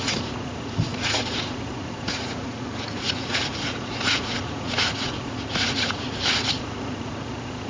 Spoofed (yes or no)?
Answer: yes